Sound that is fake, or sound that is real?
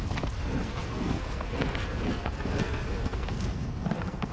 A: fake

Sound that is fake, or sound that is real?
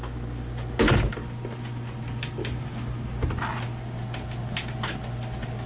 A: real